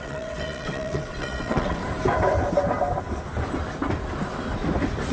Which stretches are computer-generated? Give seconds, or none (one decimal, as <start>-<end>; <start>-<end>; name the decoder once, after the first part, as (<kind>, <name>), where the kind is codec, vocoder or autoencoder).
0.0-1.8 (vocoder, WaveNeXt)